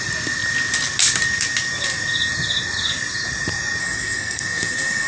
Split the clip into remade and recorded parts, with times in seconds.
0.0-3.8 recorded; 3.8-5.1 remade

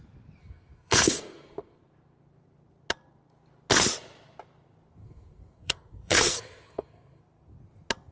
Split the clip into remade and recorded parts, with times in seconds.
0.0-0.4 recorded; 0.4-1.8 remade; 1.8-5.0 recorded; 5.0-7.2 remade; 7.2-8.1 recorded

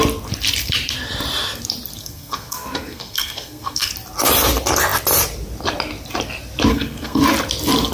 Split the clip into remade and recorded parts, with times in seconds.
0.0-2.0 recorded; 2.0-3.9 remade; 3.9-6.7 recorded; 6.7-7.2 remade; 7.2-7.9 recorded

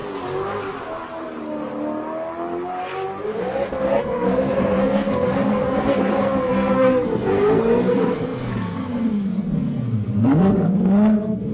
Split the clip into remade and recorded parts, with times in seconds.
0.0-3.4 recorded; 3.4-11.5 remade